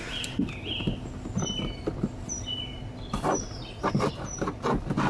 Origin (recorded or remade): recorded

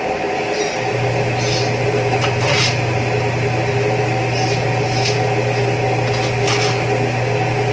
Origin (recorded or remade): recorded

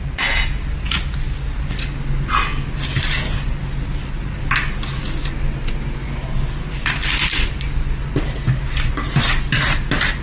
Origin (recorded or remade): recorded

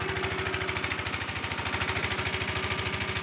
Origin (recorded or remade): recorded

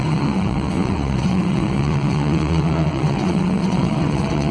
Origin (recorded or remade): remade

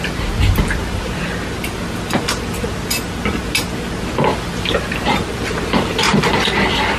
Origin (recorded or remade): recorded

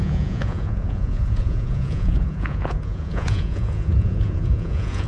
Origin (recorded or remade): remade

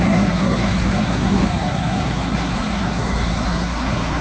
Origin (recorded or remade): remade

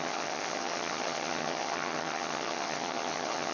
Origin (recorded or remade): remade